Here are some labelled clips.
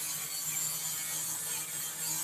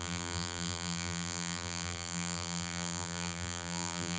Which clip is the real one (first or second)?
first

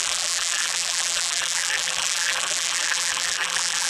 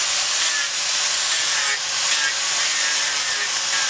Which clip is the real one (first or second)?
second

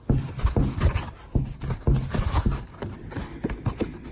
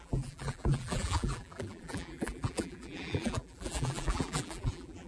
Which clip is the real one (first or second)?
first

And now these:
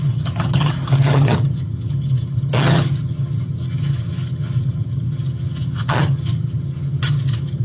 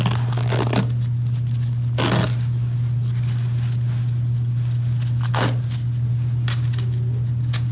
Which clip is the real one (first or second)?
second